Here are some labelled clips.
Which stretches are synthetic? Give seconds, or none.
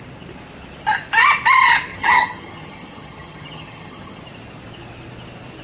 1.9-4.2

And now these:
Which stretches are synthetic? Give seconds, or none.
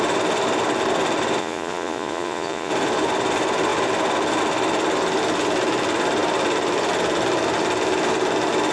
1.4-2.7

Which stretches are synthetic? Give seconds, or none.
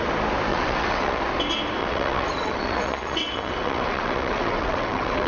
0.5-1.2; 1.8-5.3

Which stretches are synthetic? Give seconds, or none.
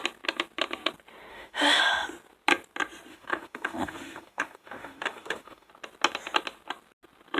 1.3-1.8; 3.1-5.7